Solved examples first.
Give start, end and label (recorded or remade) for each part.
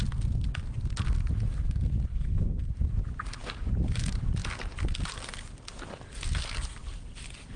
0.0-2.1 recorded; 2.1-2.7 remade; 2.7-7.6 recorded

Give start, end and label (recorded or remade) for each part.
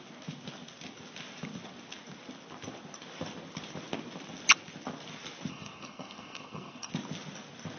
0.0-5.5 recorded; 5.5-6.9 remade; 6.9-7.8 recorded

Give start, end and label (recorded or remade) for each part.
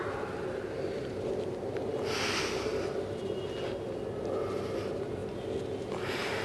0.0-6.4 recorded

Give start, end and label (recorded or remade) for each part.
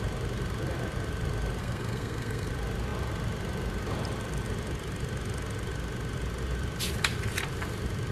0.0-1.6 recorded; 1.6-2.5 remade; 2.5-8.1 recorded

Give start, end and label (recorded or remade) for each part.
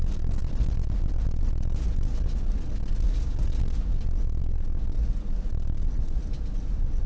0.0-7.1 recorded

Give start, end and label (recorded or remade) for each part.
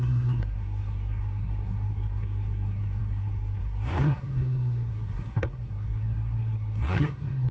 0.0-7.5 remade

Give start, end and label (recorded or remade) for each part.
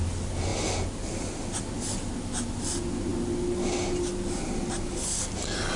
0.0-5.8 recorded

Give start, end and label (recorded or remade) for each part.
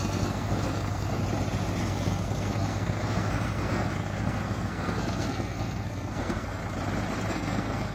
0.0-1.2 remade; 1.2-1.8 recorded; 1.8-6.6 remade; 6.6-7.3 recorded; 7.3-7.9 remade